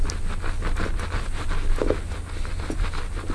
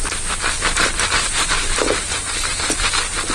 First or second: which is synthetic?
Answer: second